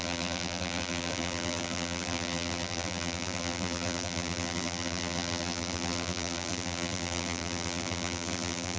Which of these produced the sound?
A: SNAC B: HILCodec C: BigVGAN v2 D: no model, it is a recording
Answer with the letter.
C